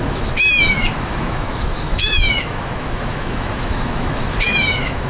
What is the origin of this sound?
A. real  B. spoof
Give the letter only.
B